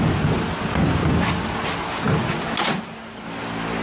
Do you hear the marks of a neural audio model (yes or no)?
no